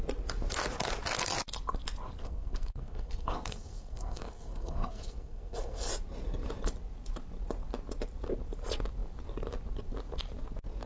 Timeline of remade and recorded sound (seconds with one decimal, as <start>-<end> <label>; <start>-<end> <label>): 0.0-2.2 recorded; 2.2-5.9 remade; 5.9-10.9 recorded